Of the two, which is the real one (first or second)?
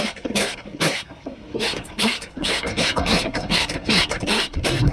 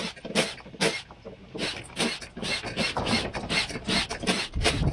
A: second